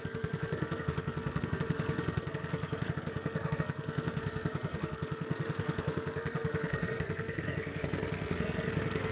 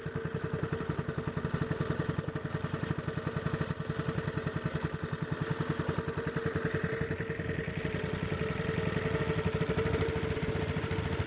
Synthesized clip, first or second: first